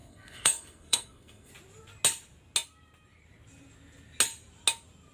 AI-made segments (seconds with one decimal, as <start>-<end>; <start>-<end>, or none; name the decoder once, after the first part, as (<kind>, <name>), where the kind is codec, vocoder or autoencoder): 0.0-1.5 (codec, SNAC)